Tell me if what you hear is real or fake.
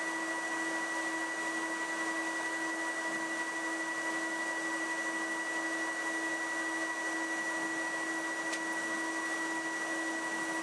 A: real